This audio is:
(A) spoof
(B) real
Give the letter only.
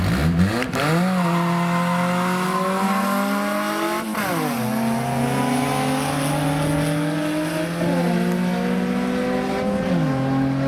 B